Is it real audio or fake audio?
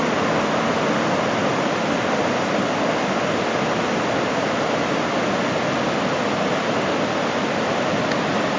real